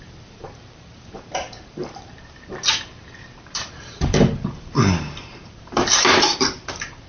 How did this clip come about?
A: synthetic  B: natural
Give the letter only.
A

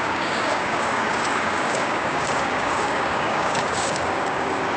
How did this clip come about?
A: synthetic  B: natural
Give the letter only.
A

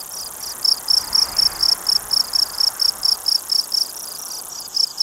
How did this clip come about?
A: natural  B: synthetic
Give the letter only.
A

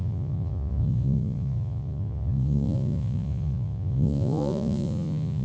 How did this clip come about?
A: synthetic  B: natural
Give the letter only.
A